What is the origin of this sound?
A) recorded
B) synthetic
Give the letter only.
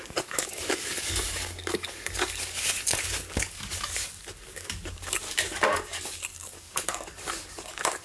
B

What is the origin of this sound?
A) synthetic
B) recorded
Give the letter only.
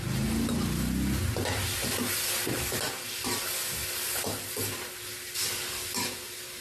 B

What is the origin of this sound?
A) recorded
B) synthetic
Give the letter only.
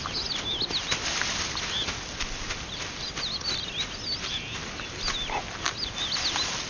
A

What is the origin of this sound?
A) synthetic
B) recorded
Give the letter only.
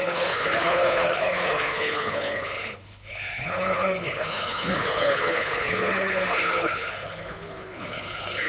A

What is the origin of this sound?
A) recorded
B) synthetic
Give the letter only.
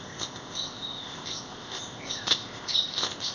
B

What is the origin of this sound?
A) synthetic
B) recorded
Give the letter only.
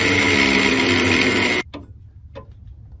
B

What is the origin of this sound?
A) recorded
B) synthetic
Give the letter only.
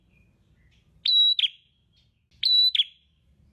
A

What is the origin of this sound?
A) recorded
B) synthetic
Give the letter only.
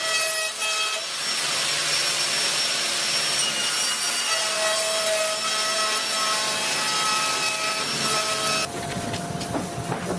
A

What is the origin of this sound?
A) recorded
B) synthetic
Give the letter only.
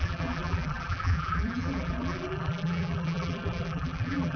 B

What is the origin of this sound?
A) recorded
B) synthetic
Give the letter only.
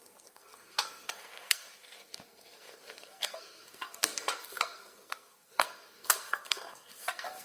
B